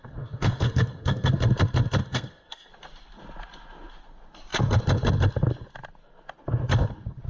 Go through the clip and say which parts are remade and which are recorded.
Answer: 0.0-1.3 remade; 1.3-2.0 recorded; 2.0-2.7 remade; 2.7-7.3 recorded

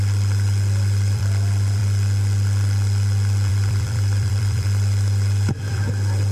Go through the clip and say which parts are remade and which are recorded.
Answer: 0.0-1.8 remade; 1.8-3.5 recorded; 3.5-6.3 remade

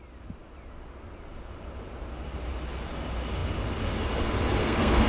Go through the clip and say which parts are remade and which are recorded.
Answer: 0.0-4.6 recorded; 4.6-5.1 remade